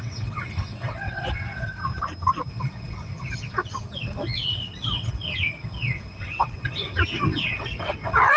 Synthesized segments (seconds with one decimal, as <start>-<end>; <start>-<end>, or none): 0.0-1.8; 2.5-8.4